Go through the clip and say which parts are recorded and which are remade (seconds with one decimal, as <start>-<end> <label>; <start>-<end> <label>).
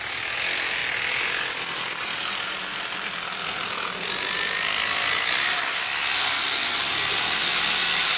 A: 0.0-8.2 recorded